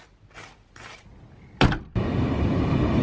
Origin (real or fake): real